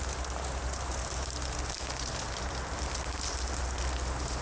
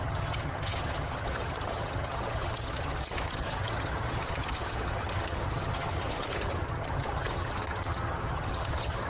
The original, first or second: first